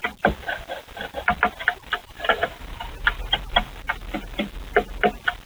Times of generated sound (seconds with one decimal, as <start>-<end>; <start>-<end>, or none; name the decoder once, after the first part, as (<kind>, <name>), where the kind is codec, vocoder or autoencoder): 2.0-3.4 (vocoder, BigVGAN v2)